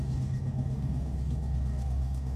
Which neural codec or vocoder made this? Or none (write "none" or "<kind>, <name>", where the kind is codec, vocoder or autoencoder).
codec, DAC